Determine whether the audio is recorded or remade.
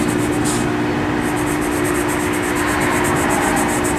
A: recorded